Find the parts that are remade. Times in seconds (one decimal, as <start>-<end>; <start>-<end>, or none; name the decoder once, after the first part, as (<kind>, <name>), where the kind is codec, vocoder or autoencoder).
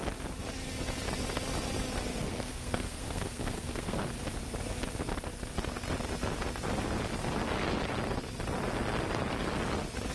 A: 2.1-4.0 (codec, SNAC)